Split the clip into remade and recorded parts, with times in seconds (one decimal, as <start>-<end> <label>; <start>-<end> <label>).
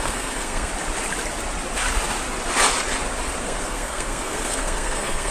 0.0-0.7 remade; 0.7-3.4 recorded; 3.4-5.3 remade